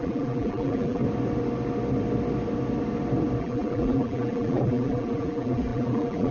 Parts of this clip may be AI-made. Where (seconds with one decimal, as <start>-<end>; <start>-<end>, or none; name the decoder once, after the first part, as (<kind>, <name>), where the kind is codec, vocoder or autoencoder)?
0.0-1.0 (vocoder, BigVGAN v2); 3.4-6.3